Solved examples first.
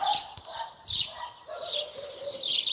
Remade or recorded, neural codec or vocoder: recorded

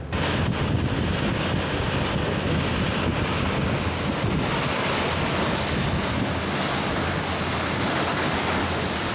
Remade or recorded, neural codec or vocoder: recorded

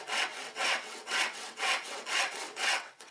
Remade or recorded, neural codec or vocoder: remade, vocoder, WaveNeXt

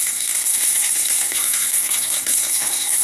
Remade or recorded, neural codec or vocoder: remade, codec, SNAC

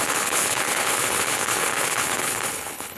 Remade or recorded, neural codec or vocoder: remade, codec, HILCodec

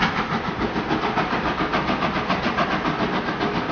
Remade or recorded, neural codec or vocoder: recorded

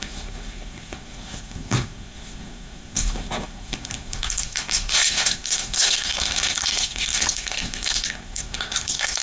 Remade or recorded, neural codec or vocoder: remade, codec, SNAC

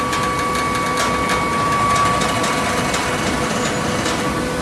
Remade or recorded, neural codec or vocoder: recorded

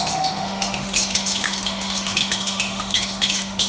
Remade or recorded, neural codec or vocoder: remade, autoencoder, DAC-VAE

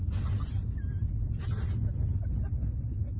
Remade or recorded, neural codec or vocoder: recorded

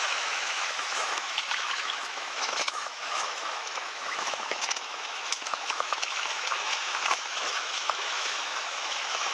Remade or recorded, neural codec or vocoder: remade, autoencoder, DAC-VAE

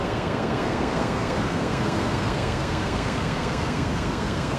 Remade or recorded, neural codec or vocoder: remade, codec, SNAC